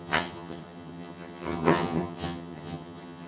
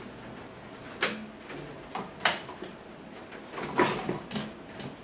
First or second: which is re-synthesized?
first